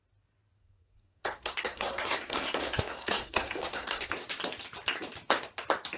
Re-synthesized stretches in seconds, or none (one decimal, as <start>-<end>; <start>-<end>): 0.6-4.1